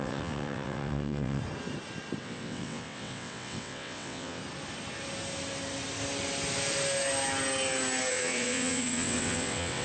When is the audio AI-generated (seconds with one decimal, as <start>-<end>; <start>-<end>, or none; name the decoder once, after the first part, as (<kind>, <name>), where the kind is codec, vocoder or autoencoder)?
0.0-1.4 (vocoder, WaveNeXt); 2.2-4.4; 8.1-9.8